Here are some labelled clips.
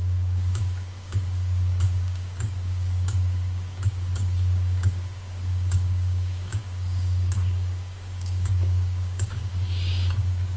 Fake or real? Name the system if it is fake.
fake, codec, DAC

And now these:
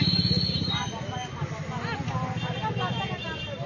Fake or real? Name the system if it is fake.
real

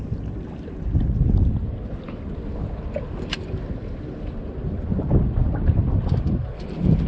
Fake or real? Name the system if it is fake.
real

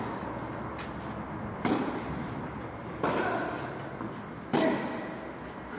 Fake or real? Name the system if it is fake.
real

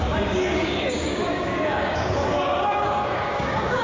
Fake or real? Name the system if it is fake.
fake, codec, DAC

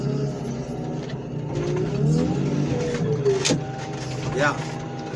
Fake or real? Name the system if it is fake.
real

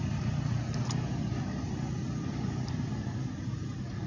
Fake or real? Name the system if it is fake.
real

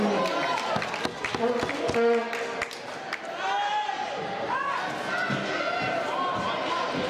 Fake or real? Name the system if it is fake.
real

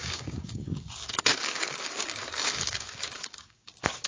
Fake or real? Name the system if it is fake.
fake, codec, DAC